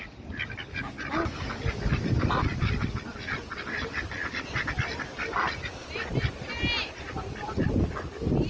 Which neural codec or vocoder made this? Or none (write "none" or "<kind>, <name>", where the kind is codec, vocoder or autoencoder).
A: none